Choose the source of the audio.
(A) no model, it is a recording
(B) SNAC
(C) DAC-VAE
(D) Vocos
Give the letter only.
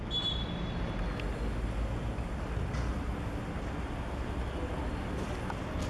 A